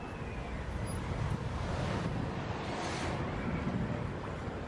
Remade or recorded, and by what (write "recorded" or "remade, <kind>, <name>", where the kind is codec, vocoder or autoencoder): recorded